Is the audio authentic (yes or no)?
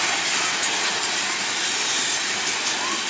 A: yes